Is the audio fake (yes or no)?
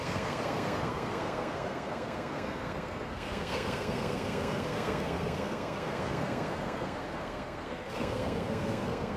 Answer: yes